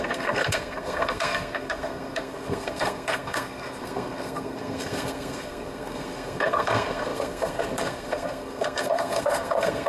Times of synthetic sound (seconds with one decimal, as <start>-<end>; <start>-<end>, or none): 0.0-9.9